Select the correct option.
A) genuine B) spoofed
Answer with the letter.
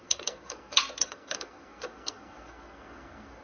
B